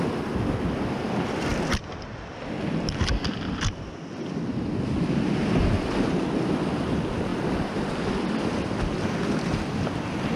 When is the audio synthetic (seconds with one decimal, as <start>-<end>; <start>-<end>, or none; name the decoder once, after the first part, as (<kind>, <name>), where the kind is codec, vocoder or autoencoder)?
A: none